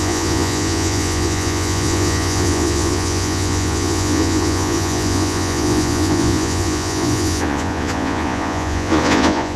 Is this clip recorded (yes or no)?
no